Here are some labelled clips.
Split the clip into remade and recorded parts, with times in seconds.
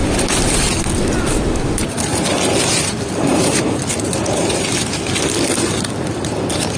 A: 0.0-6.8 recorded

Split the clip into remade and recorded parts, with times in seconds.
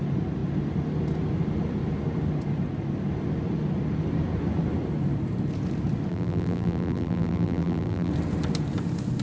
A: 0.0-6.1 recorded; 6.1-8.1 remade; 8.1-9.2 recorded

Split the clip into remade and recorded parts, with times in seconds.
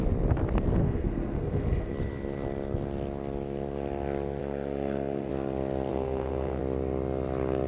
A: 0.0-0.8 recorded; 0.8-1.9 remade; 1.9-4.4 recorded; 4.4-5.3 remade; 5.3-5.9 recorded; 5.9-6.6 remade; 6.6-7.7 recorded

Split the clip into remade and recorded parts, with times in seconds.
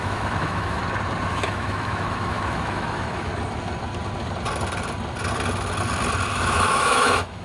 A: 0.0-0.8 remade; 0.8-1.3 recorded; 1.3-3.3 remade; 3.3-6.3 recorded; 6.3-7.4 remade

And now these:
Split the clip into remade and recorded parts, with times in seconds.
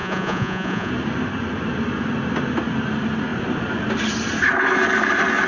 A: 0.0-0.9 remade; 0.9-5.5 recorded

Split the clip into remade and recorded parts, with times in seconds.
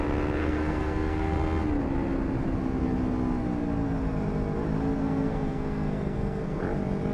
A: 0.0-0.4 recorded; 0.4-1.4 remade; 1.4-5.0 recorded; 5.0-6.6 remade; 6.6-7.1 recorded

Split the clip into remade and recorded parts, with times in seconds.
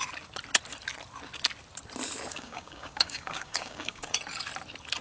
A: 0.0-2.3 recorded; 2.3-4.2 remade; 4.2-5.0 recorded